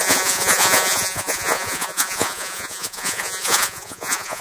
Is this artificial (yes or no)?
yes